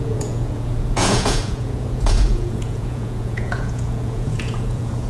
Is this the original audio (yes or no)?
no